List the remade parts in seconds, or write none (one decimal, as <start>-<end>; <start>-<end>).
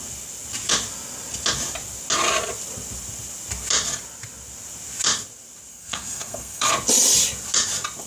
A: 5.7-6.7